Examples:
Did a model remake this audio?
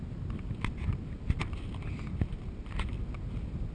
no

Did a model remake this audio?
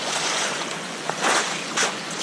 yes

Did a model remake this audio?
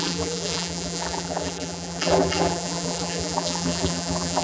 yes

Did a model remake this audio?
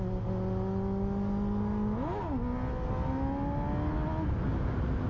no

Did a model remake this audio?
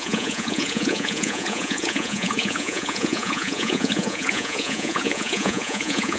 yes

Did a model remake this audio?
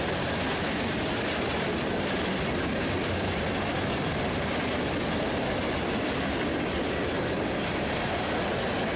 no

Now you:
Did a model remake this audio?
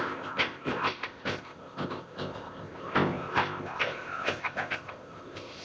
yes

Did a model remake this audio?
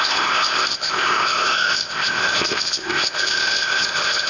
yes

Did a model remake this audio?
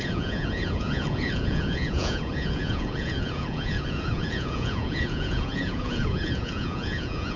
yes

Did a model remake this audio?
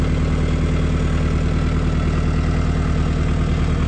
no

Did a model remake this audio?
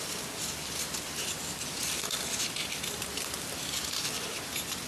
yes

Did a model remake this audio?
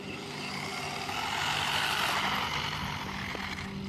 no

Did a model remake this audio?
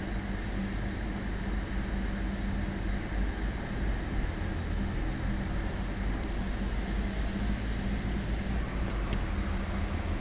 no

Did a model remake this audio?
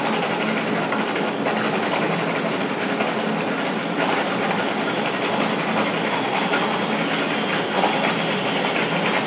no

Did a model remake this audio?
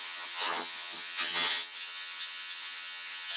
yes